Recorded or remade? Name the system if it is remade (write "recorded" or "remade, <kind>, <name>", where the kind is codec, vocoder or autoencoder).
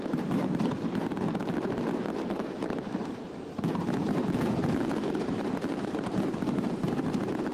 remade, vocoder, BigVGAN v2